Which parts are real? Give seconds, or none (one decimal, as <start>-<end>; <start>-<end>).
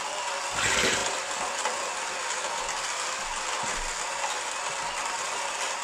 0.0-5.8